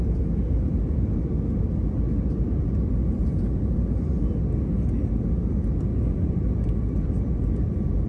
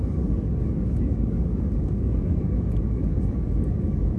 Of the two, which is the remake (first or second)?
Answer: second